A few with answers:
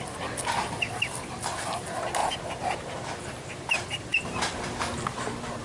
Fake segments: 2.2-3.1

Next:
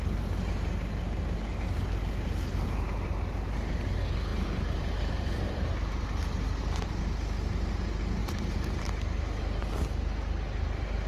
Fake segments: 4.3-5.7; 8.2-8.9

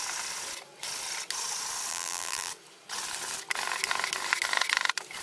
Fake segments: 1.9-2.5

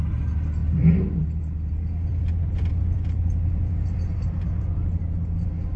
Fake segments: 0.6-1.7; 2.1-5.0

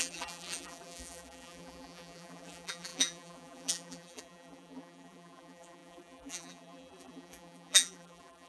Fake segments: 0.0-8.5

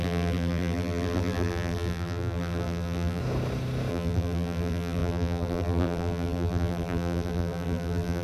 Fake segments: 0.0-3.2; 3.9-8.2